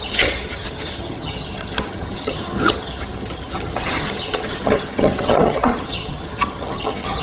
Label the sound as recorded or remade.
remade